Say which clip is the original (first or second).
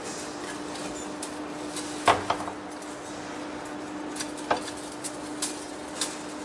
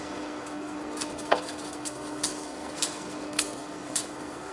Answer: first